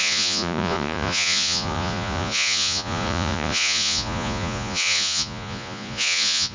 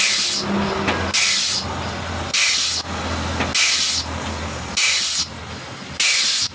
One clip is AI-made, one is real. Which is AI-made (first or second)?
first